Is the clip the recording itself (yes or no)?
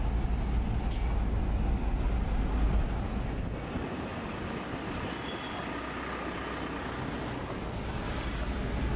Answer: yes